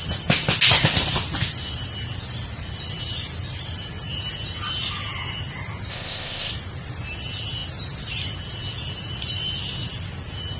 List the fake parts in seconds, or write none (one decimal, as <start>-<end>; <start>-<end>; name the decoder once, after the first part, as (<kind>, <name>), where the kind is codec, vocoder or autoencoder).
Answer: 5.9-6.5 (codec, ZipCodec)

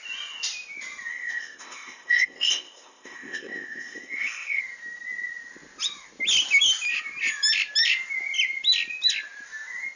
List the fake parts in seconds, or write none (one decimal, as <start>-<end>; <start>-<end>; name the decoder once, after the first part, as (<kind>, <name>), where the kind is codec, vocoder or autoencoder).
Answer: 1.1-4.6 (codec, ZipCodec)

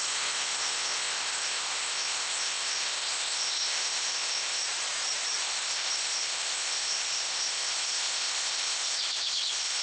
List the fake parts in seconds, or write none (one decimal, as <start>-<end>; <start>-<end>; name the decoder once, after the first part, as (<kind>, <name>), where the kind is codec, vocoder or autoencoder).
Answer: 0.0-4.6 (codec, ZipCodec); 5.4-9.8